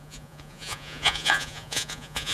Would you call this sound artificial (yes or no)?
yes